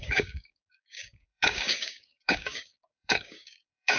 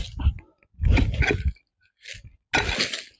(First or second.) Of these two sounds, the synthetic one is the first